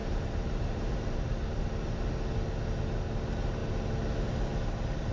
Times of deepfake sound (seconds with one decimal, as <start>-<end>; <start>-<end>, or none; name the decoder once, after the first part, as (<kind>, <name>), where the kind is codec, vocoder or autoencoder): 0.0-1.6 (vocoder, BigVGAN v2)